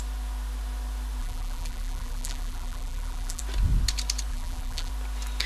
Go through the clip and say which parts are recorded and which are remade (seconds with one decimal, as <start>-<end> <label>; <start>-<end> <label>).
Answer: 0.0-1.2 recorded; 1.2-3.4 remade; 3.4-4.3 recorded; 4.3-4.9 remade; 4.9-5.5 recorded